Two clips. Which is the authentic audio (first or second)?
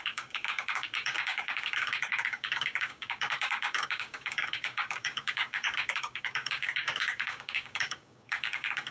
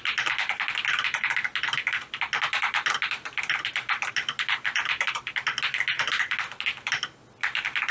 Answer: second